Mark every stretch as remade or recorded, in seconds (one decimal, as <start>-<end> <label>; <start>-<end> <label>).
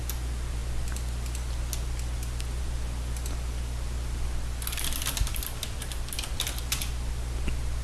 0.0-7.8 recorded